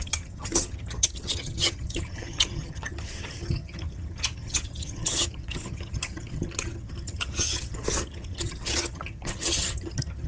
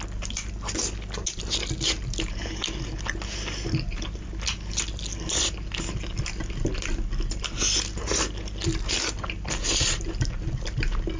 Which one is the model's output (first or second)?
first